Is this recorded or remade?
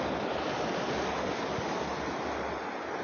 recorded